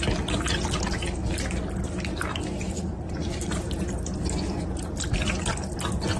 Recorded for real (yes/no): yes